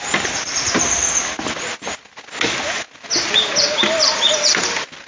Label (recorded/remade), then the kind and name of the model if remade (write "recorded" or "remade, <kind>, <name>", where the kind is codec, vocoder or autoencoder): recorded